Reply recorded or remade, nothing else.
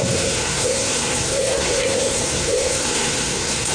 remade